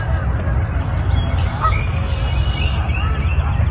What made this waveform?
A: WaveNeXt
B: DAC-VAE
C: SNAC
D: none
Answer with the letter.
D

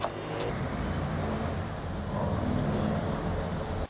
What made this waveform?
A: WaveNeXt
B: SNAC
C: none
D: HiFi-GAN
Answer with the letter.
C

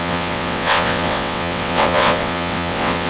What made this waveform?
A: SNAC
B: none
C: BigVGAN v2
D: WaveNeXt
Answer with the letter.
D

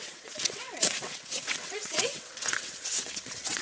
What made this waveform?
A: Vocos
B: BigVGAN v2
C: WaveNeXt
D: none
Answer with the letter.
C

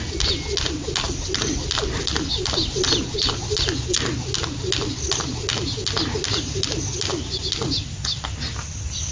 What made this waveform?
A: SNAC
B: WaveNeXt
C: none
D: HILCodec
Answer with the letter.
C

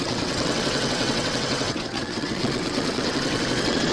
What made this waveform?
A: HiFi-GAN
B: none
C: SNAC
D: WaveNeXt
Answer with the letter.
D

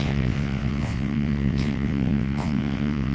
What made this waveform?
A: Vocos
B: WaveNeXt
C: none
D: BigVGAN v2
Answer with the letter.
B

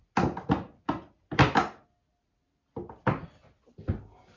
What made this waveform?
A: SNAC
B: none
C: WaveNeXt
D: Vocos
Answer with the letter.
B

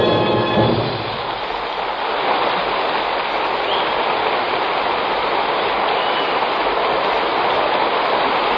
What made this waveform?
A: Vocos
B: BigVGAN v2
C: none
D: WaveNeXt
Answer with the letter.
C